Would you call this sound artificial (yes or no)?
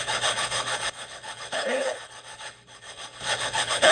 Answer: yes